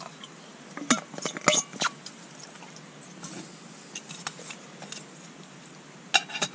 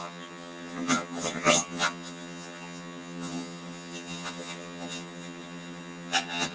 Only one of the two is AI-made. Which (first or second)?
second